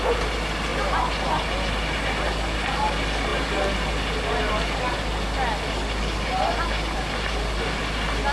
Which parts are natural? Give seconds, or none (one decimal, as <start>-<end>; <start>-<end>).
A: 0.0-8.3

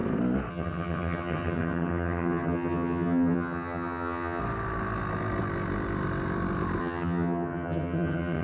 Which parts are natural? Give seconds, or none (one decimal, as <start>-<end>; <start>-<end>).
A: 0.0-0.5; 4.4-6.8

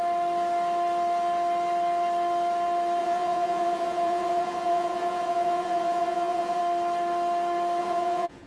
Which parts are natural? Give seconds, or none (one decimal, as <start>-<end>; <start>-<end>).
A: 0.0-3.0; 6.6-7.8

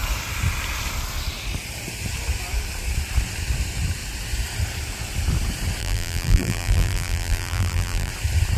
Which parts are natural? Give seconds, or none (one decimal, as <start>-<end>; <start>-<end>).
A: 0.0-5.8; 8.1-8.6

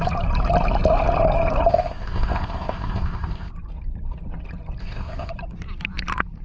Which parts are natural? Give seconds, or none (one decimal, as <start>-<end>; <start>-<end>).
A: 0.0-1.7; 3.5-4.8; 5.3-6.4

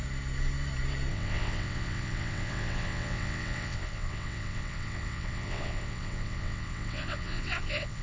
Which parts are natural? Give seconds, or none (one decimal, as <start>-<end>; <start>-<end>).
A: 0.0-1.1

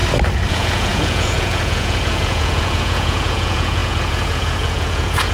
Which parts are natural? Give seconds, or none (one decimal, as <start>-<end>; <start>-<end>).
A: 0.0-0.5

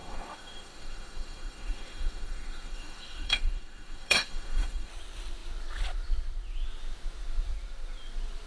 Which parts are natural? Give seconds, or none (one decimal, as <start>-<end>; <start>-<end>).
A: 4.9-8.5